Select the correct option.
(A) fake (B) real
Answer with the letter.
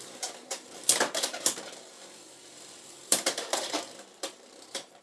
A